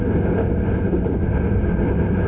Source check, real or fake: real